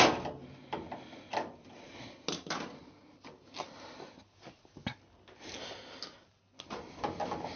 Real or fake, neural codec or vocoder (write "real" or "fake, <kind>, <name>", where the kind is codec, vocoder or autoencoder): real